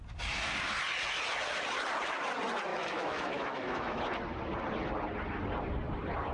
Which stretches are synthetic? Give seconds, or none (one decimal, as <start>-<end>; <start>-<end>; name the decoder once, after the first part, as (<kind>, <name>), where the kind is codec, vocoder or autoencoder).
2.7-4.0 (autoencoder, DAC-VAE)

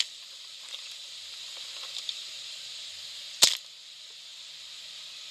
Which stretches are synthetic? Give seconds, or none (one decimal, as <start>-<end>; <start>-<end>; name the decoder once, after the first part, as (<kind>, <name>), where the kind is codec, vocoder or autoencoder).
none

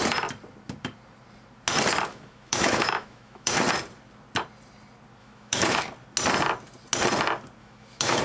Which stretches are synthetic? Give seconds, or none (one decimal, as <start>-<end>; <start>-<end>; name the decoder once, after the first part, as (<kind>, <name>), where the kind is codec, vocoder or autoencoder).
2.1-3.6 (autoencoder, DAC-VAE); 5.2-5.8; 7.6-8.2

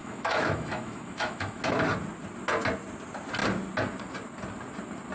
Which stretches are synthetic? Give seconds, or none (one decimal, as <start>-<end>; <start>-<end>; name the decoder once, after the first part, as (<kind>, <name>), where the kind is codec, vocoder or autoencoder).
0.0-1.6 (autoencoder, DAC-VAE)

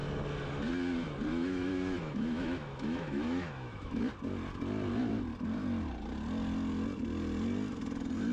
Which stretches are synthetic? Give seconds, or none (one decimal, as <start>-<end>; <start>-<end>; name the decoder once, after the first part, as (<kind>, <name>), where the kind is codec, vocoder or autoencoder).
1.3-4.0 (autoencoder, DAC-VAE)

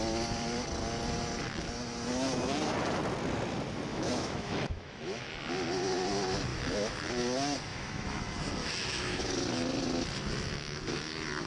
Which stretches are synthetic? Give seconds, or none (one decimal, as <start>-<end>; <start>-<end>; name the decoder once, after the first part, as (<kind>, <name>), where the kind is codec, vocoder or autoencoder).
3.9-5.3 (autoencoder, DAC-VAE); 6.5-7.1; 7.7-8.2; 8.6-9.3

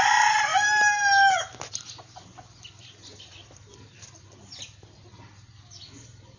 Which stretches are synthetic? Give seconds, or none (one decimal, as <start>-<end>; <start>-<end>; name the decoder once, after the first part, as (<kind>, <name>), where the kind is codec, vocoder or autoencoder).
none

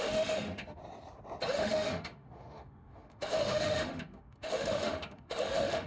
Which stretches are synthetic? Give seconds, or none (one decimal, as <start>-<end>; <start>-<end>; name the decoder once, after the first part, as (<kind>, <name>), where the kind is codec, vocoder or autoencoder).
0.0-0.8 (autoencoder, DAC-VAE); 1.5-5.9